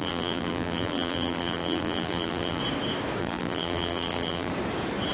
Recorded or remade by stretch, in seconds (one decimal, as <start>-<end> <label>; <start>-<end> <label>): 0.0-2.6 remade; 2.6-3.2 recorded; 3.2-4.5 remade; 4.5-5.1 recorded